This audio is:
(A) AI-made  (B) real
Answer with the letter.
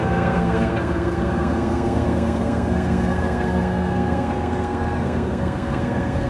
A